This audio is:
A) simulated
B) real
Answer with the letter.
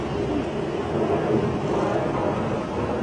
B